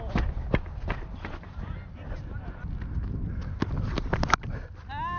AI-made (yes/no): no